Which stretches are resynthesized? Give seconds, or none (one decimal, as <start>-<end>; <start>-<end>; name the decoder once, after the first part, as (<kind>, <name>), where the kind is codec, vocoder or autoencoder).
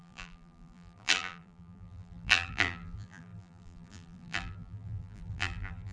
0.0-5.9 (vocoder, BigVGAN v2)